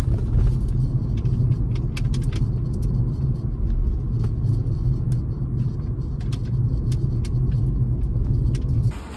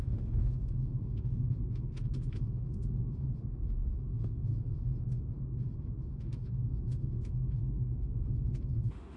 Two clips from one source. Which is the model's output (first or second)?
second